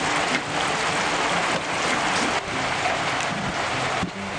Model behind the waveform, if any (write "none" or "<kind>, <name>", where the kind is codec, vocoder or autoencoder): none